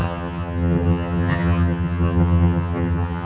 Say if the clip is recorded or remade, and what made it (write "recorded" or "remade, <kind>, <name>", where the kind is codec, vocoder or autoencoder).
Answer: remade, vocoder, HiFi-GAN